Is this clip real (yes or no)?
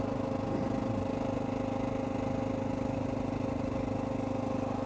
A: yes